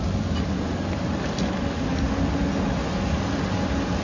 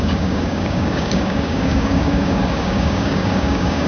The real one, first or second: first